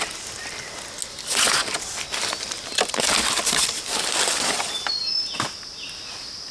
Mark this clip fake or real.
real